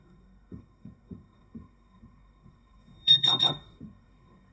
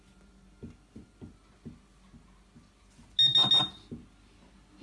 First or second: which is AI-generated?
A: first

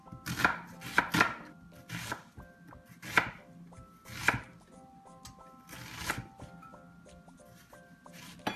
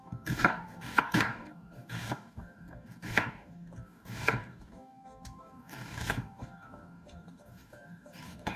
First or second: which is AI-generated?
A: second